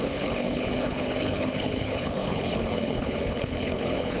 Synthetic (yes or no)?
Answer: yes